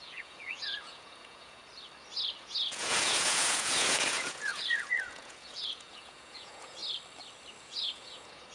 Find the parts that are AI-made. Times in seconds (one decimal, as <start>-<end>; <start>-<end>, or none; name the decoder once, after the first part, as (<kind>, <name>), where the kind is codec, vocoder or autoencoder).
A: 0.0-1.6 (vocoder, Vocos); 2.4-6.8; 7.6-8.5